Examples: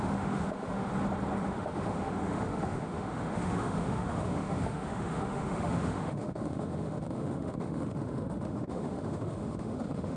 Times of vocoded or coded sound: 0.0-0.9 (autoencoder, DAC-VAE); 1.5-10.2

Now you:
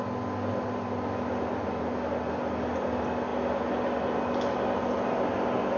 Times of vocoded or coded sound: none

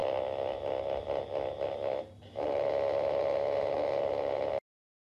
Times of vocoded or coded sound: 1.9-2.7 (vocoder, BigVGAN v2); 3.2-4.5

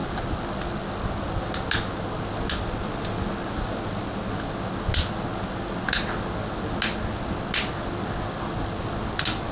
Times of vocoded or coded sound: none

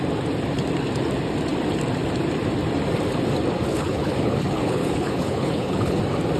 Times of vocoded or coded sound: 3.7-6.0 (codec, HILCodec)